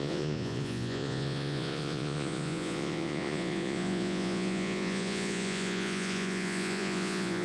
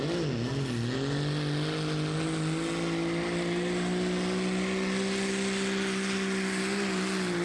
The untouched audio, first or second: second